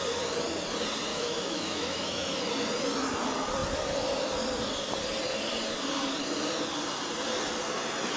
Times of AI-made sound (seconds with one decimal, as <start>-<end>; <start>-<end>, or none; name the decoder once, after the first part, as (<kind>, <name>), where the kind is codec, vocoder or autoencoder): 1.1-2.5 (autoencoder, DAC-VAE)